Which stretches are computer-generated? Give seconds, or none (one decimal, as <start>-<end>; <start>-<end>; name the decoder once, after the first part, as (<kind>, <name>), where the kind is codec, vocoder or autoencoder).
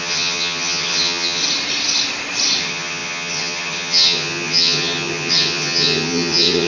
0.0-1.4 (vocoder, HiFi-GAN); 2.6-6.7